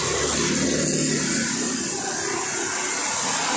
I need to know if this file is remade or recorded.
recorded